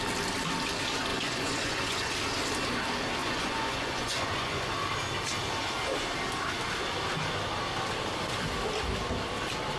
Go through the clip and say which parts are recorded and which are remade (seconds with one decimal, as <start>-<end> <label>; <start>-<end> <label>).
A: 0.0-1.1 recorded; 1.1-2.1 remade; 2.1-3.2 recorded; 3.2-4.7 remade; 4.7-9.8 recorded